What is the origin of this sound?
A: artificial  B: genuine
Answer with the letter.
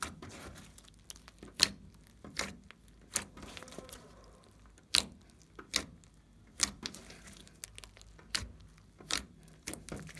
B